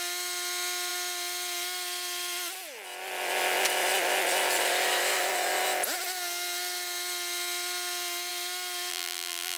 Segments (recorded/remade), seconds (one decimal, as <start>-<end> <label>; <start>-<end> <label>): 0.0-8.9 recorded; 8.9-9.6 remade

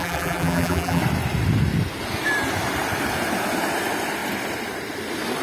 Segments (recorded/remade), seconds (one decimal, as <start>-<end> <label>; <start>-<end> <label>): 0.0-1.0 remade; 1.0-5.4 recorded

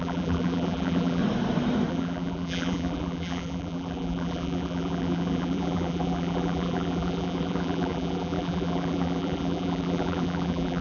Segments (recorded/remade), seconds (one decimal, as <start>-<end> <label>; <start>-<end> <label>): 0.0-1.2 remade; 1.2-1.9 recorded; 1.9-10.8 remade

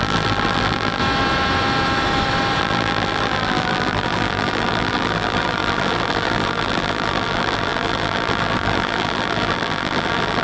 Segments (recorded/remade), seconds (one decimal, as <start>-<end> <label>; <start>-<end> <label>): 0.0-1.0 remade; 1.0-2.6 recorded; 2.6-10.4 remade

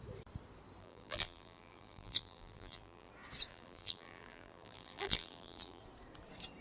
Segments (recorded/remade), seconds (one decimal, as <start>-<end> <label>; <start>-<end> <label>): 0.0-0.8 recorded; 0.8-3.1 remade; 3.1-3.5 recorded; 3.5-5.8 remade; 5.8-6.6 recorded

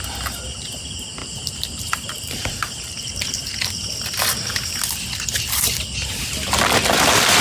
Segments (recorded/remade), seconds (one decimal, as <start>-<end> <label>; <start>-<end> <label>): 0.0-1.2 recorded; 1.2-3.9 remade; 3.9-7.4 recorded

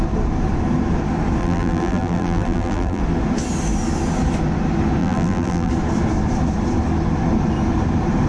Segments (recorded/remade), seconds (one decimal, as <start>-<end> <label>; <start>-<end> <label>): 0.0-1.4 recorded; 1.4-3.0 remade; 3.0-5.0 recorded; 5.0-5.7 remade; 5.7-8.3 recorded